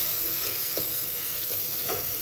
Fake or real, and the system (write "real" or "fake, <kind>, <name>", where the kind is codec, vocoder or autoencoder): fake, codec, SNAC